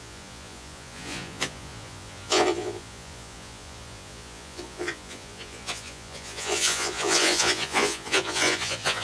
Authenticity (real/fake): fake